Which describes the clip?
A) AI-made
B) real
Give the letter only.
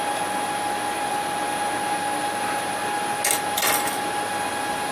B